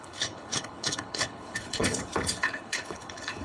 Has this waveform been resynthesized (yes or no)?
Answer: yes